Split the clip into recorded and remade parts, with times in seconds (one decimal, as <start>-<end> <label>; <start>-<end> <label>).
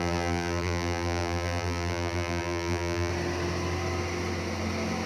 0.0-3.1 remade; 3.1-5.1 recorded